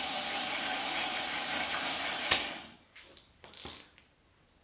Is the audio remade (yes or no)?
no